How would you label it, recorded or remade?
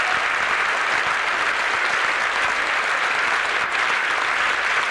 recorded